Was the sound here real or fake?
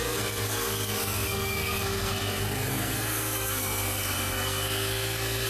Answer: fake